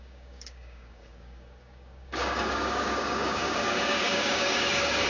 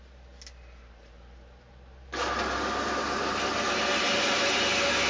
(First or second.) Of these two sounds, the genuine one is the second